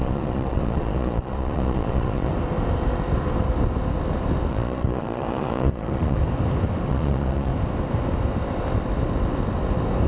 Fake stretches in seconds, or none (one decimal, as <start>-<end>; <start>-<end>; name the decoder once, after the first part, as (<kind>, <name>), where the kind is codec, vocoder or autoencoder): 0.0-2.3 (vocoder, Vocos); 4.5-6.2; 6.9-7.5

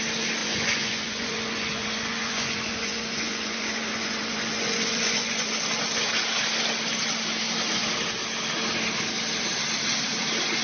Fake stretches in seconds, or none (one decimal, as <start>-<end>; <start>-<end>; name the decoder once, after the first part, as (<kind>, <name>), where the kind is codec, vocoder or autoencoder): 0.4-5.5 (vocoder, Vocos)